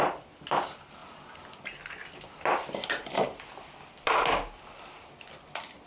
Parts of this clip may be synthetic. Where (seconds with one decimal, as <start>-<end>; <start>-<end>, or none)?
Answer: none